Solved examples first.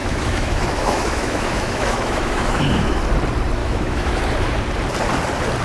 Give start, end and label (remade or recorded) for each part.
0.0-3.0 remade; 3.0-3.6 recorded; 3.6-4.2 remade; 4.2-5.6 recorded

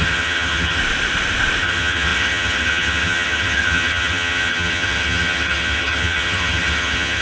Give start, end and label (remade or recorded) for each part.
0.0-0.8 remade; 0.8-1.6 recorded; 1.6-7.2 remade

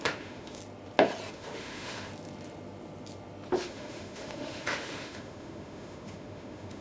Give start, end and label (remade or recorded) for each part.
0.0-0.6 remade; 0.6-1.3 recorded; 1.3-2.1 remade; 2.1-3.5 recorded; 3.5-6.8 remade

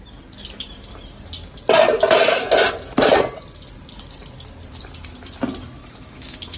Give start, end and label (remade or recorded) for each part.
0.0-5.8 recorded; 5.8-6.6 remade

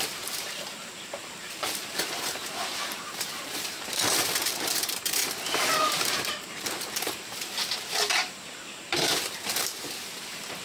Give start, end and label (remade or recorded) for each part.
0.0-5.2 remade; 5.2-6.0 recorded; 6.0-10.6 remade

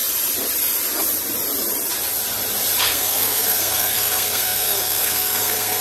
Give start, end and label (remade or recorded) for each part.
0.0-2.8 recorded; 2.8-5.8 remade

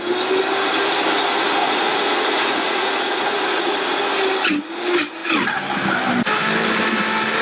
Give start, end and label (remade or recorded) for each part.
0.0-1.6 recorded; 1.6-4.0 remade; 4.0-7.4 recorded

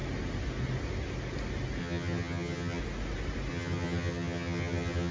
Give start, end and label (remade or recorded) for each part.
0.0-1.8 recorded; 1.8-2.8 remade; 2.8-3.5 recorded; 3.5-5.1 remade